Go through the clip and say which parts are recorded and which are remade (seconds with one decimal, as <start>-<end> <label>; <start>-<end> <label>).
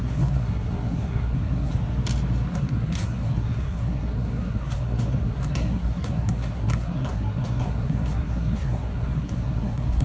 0.0-1.7 remade; 1.7-2.5 recorded; 2.5-10.0 remade